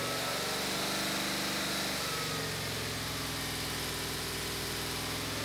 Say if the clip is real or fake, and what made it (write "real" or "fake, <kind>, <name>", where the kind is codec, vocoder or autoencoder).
real